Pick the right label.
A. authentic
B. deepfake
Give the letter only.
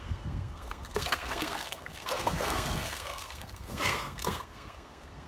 B